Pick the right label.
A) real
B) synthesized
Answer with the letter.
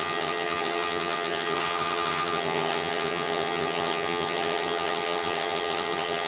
B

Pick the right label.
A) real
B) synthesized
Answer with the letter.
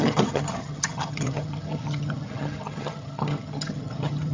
B